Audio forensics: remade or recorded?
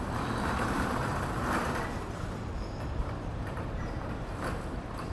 remade